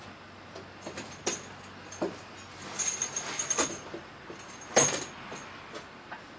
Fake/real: real